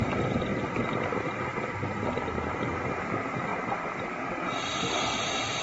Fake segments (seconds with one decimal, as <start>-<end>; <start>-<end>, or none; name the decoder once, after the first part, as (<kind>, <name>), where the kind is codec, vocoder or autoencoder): 0.0-0.5 (vocoder, BigVGAN v2); 2.6-3.5

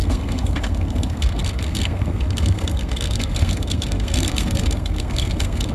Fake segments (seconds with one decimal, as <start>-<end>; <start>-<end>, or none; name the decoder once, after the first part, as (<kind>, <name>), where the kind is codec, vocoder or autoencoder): 0.0-5.7 (codec, SNAC)

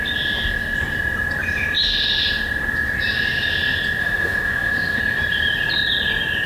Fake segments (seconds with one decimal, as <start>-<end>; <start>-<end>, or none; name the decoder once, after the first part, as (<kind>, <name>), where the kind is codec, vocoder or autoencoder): 4.0-5.0 (autoencoder, DAC-VAE)